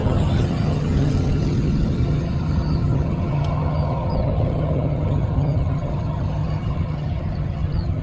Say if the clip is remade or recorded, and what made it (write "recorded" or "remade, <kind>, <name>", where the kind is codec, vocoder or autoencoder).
remade, vocoder, HiFi-GAN